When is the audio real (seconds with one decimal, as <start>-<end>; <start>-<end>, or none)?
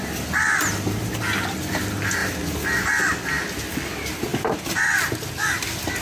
0.0-6.0